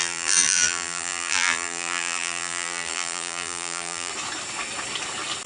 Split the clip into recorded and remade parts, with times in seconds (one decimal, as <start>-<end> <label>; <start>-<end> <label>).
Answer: 0.0-4.1 remade; 4.1-5.5 recorded